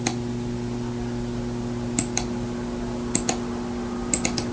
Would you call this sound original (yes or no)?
yes